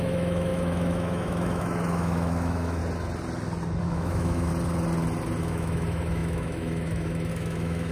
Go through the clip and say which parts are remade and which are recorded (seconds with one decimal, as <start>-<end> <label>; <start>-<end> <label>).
0.0-2.8 remade; 2.8-3.8 recorded; 3.8-4.5 remade; 4.5-5.4 recorded; 5.4-7.9 remade